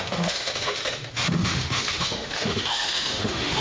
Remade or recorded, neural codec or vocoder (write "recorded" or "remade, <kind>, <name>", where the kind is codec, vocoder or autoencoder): remade, autoencoder, DAC-VAE